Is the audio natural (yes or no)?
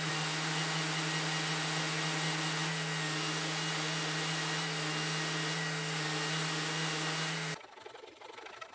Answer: yes